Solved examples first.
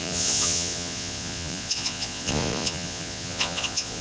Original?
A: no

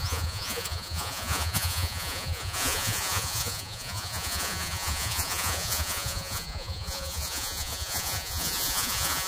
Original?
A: no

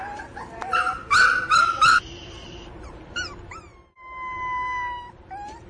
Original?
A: yes